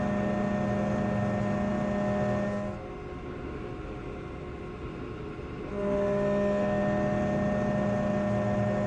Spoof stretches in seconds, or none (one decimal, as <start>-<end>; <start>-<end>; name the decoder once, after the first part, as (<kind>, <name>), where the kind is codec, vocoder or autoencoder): none